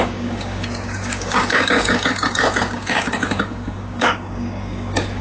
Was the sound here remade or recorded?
remade